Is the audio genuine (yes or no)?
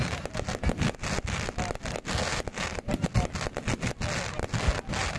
yes